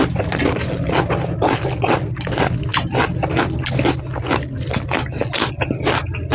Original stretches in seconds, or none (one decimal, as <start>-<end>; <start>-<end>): 0.0-6.3